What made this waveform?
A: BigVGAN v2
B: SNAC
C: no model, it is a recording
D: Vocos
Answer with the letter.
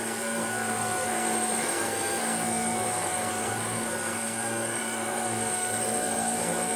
B